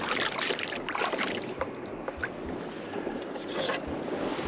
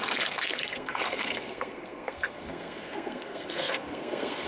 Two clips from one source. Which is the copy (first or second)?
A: second